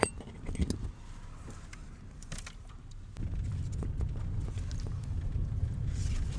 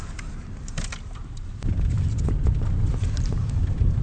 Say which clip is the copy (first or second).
second